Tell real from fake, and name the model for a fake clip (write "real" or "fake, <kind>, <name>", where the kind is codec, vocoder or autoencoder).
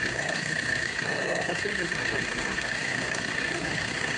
fake, codec, SNAC